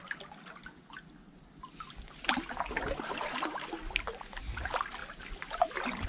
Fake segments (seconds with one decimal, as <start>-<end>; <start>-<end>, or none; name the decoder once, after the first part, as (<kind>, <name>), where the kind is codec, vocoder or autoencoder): none